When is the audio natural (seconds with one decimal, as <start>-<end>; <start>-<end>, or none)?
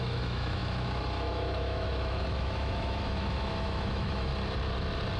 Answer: 4.3-5.2